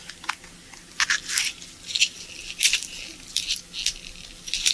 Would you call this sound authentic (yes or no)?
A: yes